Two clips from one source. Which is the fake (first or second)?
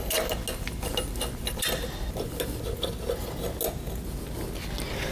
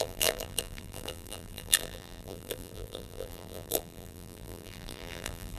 second